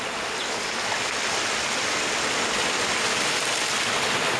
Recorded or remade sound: recorded